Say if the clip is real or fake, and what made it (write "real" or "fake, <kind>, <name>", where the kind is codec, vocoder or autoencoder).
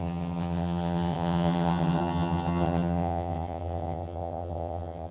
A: fake, vocoder, HiFi-GAN